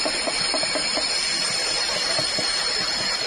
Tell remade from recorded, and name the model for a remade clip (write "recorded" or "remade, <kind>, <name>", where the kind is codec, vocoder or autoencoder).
recorded